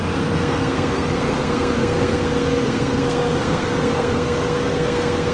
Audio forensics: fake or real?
fake